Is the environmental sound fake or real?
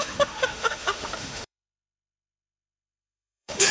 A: fake